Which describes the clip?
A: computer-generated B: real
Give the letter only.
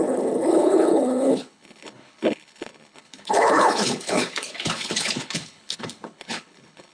A